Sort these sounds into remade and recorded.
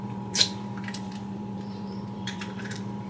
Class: remade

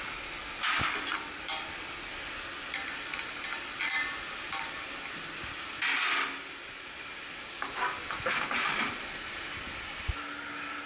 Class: recorded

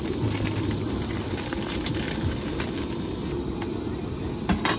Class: recorded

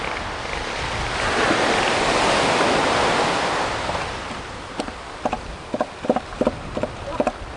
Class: recorded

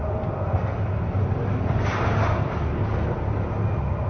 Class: recorded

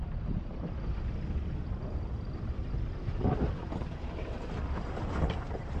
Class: recorded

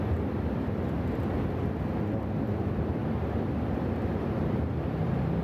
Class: recorded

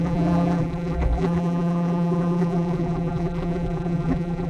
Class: remade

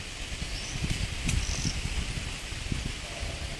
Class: recorded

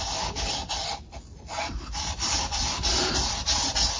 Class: recorded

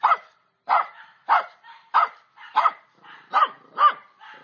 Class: recorded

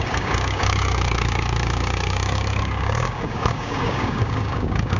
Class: remade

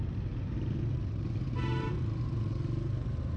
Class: recorded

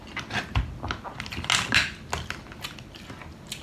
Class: recorded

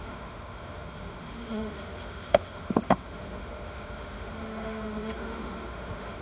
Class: remade